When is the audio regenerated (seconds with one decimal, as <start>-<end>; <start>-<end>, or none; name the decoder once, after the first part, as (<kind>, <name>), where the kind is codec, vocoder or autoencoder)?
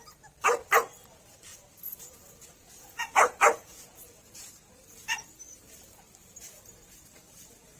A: 1.5-4.5 (vocoder, Vocos)